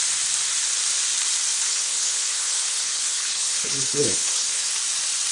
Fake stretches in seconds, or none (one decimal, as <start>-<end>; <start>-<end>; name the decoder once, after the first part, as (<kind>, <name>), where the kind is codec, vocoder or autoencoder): 1.5-4.7 (codec, HILCodec)